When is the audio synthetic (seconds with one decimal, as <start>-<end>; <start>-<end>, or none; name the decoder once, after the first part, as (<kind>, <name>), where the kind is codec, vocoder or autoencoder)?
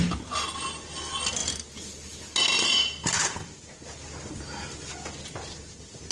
none